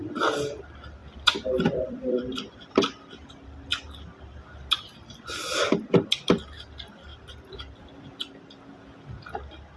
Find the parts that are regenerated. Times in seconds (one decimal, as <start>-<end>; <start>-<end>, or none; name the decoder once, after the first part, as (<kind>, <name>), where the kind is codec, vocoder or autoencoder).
1.0-3.1 (vocoder, BigVGAN v2); 7.1-8.7